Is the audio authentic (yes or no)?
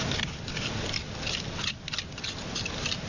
yes